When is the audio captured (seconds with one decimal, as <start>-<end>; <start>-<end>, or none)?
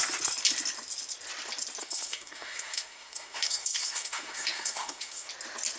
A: 0.0-1.8; 5.3-5.8